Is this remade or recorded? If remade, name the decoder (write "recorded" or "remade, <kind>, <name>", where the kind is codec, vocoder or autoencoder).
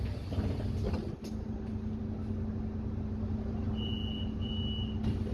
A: recorded